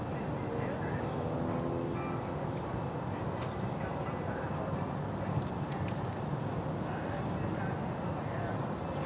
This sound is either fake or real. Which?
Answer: real